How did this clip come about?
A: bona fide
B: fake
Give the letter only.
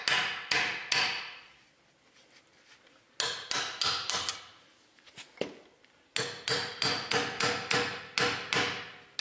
A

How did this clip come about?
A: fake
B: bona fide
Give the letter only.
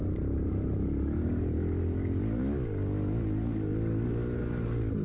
B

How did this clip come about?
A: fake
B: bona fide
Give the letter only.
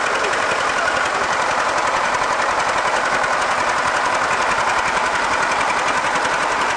B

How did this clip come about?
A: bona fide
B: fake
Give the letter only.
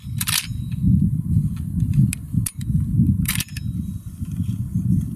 A